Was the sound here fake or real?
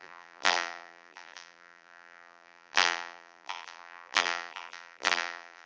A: fake